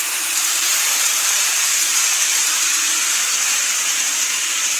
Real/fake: fake